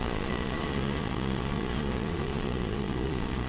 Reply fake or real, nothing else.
fake